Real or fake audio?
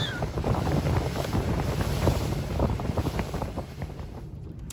fake